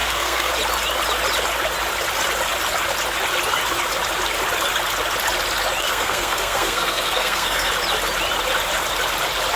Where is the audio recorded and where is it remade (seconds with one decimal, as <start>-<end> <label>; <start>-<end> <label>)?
0.0-0.5 remade; 0.5-5.8 recorded; 5.8-7.7 remade; 7.7-9.6 recorded